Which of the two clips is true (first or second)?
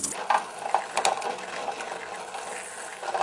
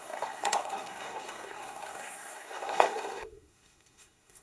first